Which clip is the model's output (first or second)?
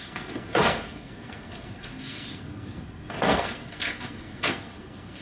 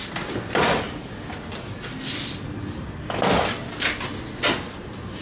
first